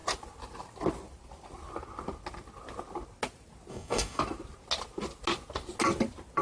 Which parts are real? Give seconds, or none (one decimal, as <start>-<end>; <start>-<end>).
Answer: 0.0-3.7; 4.2-6.4